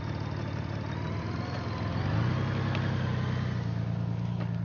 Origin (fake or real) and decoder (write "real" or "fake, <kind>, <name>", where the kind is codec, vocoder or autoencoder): real